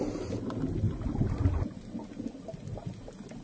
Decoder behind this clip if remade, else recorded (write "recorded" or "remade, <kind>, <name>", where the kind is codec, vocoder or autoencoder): recorded